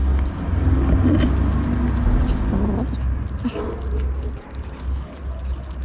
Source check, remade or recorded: recorded